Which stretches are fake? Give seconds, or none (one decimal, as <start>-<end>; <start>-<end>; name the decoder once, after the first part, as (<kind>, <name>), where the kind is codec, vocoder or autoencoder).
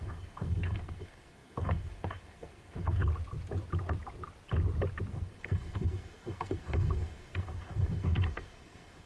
0.0-3.0 (codec, SNAC); 5.1-9.1